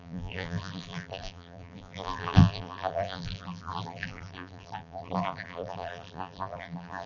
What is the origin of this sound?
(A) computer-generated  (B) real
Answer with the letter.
A